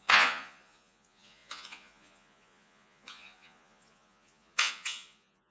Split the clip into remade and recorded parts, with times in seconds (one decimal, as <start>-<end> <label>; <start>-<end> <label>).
0.0-5.5 remade